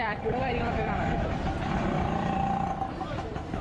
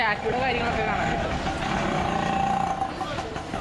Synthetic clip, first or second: first